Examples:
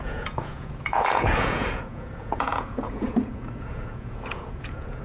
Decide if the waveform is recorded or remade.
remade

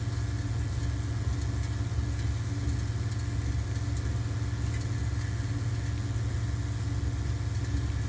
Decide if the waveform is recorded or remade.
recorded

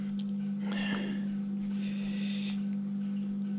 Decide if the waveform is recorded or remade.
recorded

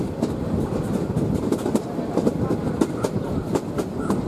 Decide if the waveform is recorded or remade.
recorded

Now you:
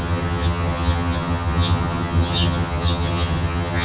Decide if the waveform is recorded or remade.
remade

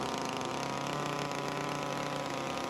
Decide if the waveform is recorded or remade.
recorded